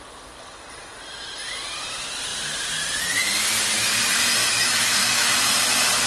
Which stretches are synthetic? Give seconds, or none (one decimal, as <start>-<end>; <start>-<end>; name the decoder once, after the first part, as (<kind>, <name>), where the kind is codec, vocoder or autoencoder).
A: 4.4-5.3 (autoencoder, DAC-VAE)

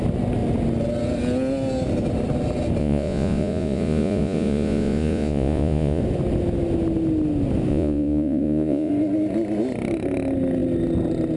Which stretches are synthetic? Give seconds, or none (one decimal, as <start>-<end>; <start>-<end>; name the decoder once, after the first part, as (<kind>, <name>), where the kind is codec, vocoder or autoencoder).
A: 2.8-6.0 (vocoder, Vocos); 7.7-8.9